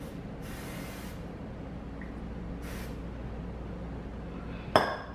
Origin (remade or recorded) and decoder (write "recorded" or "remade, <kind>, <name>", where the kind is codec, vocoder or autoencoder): recorded